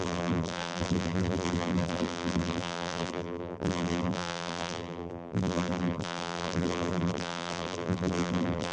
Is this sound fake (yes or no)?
yes